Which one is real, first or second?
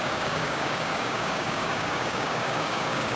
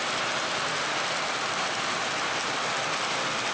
second